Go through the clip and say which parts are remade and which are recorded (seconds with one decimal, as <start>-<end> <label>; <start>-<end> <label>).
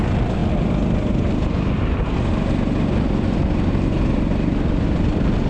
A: 0.0-5.5 recorded